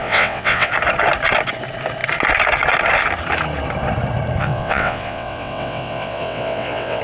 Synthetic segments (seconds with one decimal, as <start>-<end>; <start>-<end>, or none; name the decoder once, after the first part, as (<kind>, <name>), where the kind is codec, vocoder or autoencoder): 0.0-0.7 (vocoder, WaveNeXt); 4.4-7.0